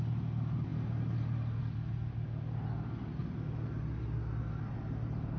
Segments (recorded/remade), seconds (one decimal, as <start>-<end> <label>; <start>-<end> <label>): 0.0-5.4 recorded